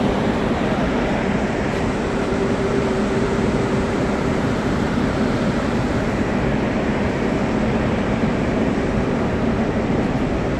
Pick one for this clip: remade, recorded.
remade